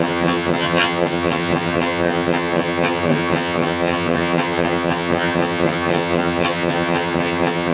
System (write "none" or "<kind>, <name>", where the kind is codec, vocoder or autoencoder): vocoder, HiFi-GAN